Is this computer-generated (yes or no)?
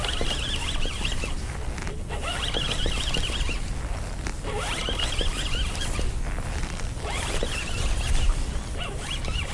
no